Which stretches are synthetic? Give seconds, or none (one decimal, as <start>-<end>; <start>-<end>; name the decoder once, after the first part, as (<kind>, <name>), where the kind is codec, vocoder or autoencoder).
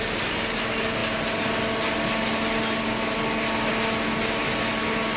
none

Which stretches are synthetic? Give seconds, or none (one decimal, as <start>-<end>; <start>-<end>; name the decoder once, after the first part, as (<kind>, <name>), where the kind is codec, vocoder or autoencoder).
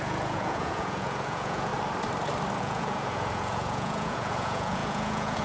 0.0-1.7 (vocoder, Vocos); 2.6-5.4